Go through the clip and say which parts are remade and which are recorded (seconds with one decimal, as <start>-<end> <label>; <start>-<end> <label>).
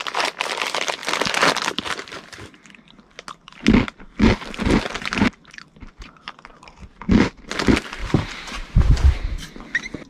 0.0-6.5 recorded; 6.5-7.1 remade; 7.1-8.0 recorded; 8.0-9.1 remade; 9.1-10.1 recorded